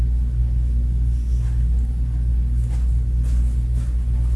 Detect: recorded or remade recorded